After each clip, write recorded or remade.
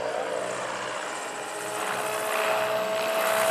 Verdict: recorded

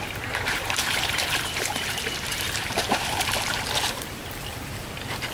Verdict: remade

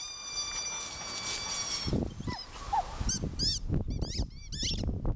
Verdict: recorded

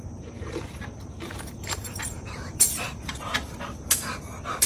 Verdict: remade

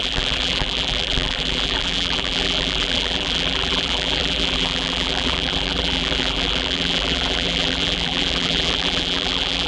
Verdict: remade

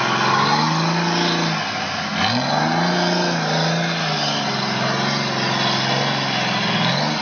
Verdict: recorded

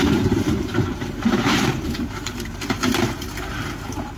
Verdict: remade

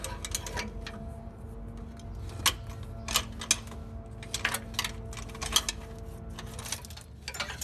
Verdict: recorded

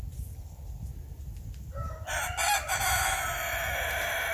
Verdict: recorded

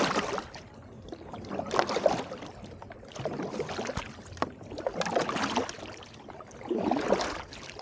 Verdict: recorded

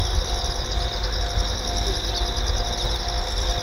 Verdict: recorded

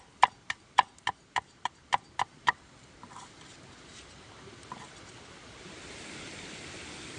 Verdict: recorded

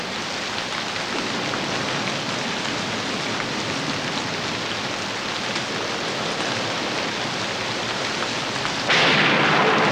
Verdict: recorded